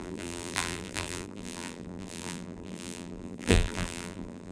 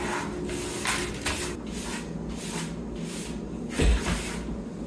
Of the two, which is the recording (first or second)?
second